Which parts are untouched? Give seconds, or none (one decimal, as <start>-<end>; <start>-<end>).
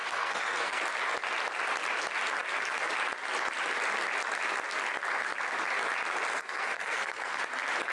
0.8-6.3; 7.4-7.9